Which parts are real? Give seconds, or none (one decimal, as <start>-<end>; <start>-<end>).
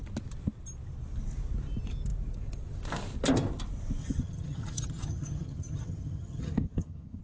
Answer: 0.0-4.0